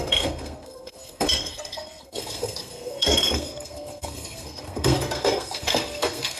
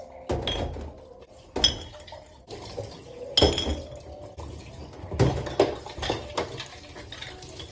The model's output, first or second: first